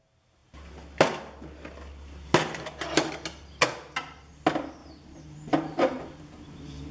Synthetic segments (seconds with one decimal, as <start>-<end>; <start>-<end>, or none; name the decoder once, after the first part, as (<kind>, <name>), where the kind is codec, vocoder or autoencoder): 4.8-5.8 (vocoder, BigVGAN v2)